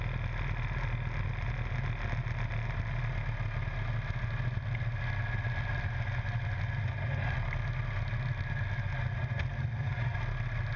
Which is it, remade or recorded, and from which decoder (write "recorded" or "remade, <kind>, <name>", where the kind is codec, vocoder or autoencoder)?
recorded